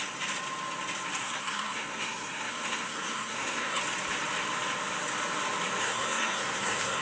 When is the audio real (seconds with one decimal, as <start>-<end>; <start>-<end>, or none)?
0.0-1.2; 3.8-5.8